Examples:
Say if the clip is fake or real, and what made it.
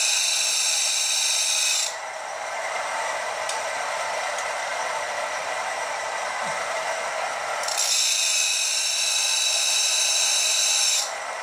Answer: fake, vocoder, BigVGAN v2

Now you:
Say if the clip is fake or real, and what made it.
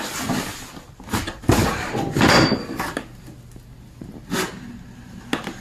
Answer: real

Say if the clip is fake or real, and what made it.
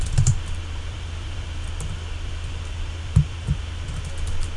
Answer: fake, vocoder, BigVGAN v2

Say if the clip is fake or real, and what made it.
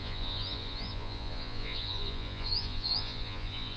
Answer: fake, vocoder, Vocos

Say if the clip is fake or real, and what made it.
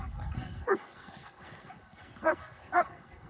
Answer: fake, codec, SNAC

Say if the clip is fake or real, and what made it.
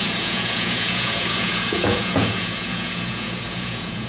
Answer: fake, vocoder, Vocos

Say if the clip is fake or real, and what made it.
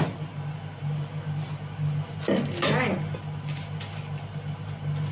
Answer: fake, vocoder, BigVGAN v2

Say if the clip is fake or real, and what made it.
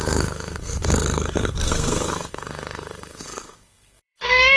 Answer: fake, codec, SNAC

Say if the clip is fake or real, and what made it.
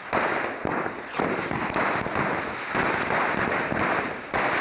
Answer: real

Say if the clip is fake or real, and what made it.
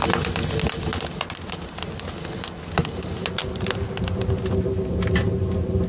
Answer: real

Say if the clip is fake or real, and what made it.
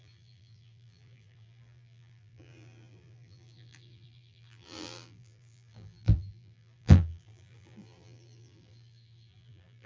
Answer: fake, vocoder, BigVGAN v2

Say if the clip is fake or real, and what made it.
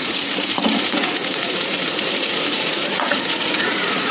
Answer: fake, vocoder, Vocos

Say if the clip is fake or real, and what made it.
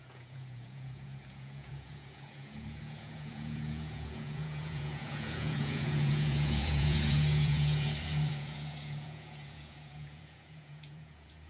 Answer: fake, vocoder, Vocos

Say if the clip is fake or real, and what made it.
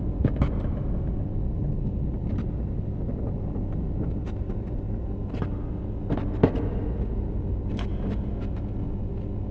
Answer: real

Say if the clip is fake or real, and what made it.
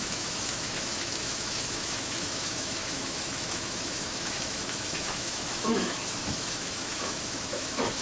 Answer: fake, autoencoder, DAC-VAE